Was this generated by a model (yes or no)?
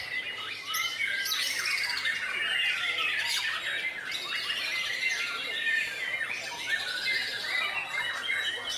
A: no